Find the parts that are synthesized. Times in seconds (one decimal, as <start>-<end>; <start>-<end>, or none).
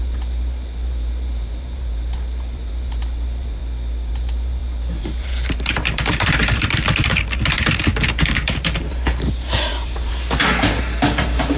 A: 0.0-3.6; 4.1-11.6